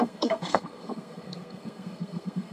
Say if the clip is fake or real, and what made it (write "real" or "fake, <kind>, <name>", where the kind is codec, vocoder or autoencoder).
fake, codec, SNAC